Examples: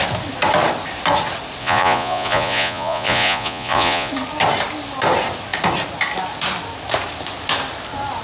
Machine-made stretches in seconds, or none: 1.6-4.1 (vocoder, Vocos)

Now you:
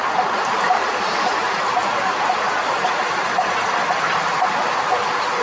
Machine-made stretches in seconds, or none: none

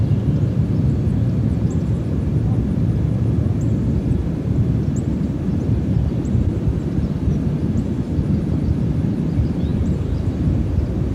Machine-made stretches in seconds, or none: 9.7-10.7 (vocoder, BigVGAN v2)

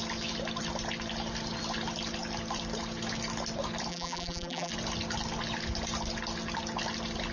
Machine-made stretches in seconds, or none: 3.9-4.7 (vocoder, BigVGAN v2)

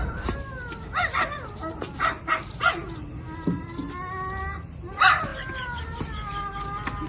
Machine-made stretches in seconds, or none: none

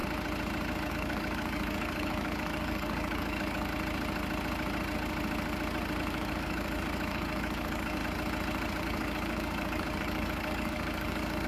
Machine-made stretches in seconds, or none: 0.9-3.7 (codec, DAC); 6.0-8.0; 8.8-11.5

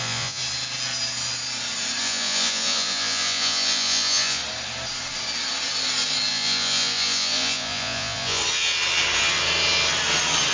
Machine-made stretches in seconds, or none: 0.0-0.4 (vocoder, Vocos); 2.0-4.4; 6.3-8.4